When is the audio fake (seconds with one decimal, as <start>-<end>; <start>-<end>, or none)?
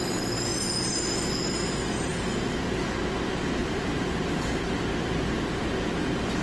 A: 2.1-2.8; 3.6-4.7